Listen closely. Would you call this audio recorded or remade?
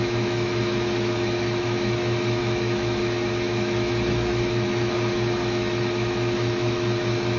remade